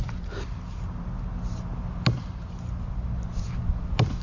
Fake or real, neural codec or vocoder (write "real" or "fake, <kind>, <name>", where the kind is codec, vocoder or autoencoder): real